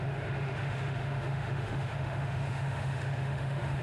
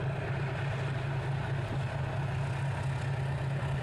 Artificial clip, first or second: first